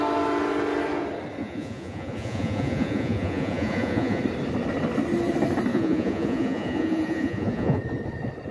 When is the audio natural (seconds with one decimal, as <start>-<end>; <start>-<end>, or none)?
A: 0.0-1.4; 4.2-5.7; 7.8-8.5